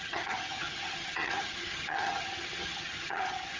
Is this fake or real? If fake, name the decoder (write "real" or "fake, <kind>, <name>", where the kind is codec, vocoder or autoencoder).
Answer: fake, vocoder, HiFi-GAN